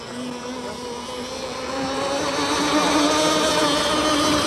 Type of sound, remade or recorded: recorded